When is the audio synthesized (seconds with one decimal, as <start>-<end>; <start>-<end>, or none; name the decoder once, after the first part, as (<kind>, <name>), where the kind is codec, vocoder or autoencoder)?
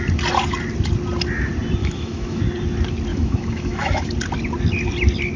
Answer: 1.8-2.4 (autoencoder, DAC-VAE); 3.1-4.0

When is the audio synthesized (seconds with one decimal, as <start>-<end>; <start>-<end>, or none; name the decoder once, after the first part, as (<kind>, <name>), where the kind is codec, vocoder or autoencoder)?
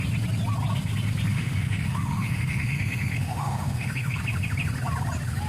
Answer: 1.3-4.2 (autoencoder, DAC-VAE)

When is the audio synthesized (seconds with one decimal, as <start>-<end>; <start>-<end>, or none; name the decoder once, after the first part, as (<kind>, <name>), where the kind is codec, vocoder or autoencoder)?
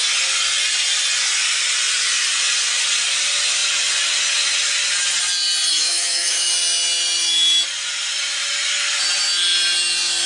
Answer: 5.7-6.5 (autoencoder, DAC-VAE)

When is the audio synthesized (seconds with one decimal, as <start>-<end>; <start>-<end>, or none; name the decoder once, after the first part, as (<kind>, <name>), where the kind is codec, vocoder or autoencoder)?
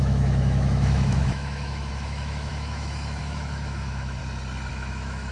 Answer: 0.0-4.2 (autoencoder, DAC-VAE); 4.7-5.3